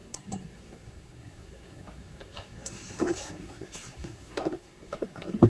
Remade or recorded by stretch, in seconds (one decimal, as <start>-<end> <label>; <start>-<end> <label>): 0.0-5.5 remade